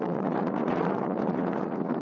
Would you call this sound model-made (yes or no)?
yes